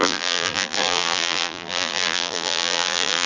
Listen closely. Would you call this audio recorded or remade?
remade